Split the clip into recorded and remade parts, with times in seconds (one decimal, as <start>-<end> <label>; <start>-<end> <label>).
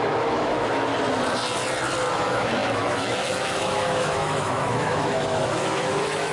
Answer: 0.0-0.9 remade; 0.9-2.1 recorded; 2.1-6.3 remade